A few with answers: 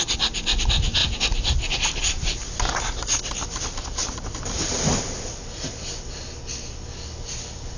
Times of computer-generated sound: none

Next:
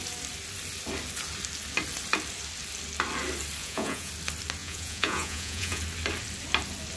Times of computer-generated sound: 3.6-4.1 (vocoder, Vocos); 4.6-5.8

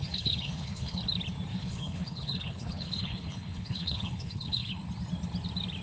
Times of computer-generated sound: 0.0-1.0 (codec, HILCodec); 1.5-4.8

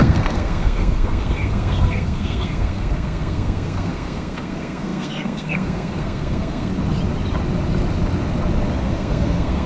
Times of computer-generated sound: 0.0-6.7 (codec, SNAC); 8.8-9.7